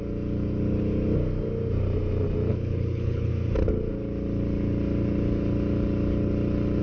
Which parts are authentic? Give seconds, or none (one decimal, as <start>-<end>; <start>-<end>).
0.0-2.5; 3.3-6.8